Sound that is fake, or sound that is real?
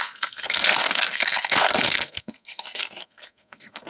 fake